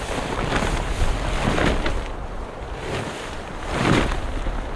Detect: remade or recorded recorded